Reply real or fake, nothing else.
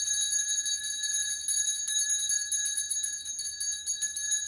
real